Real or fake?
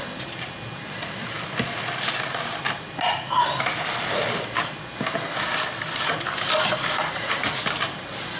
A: real